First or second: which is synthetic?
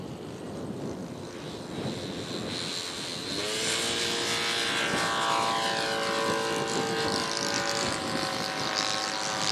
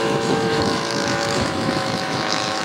second